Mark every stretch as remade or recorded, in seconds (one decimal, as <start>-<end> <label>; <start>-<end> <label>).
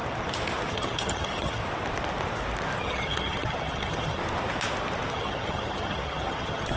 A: 0.0-0.7 recorded; 0.7-1.6 remade; 1.6-2.8 recorded; 2.8-4.2 remade; 4.2-5.1 recorded; 5.1-6.8 remade